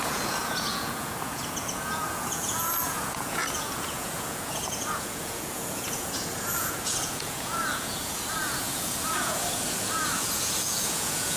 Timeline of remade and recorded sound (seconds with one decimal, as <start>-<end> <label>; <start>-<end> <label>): 0.0-11.4 remade